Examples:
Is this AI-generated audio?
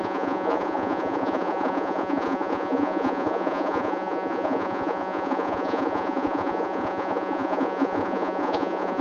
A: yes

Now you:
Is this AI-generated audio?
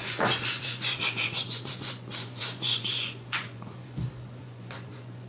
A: yes